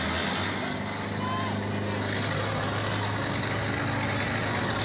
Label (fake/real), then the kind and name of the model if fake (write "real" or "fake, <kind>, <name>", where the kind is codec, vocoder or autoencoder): real